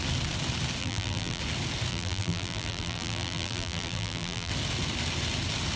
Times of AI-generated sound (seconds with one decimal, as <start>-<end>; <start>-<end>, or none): 0.8-1.4; 1.9-4.5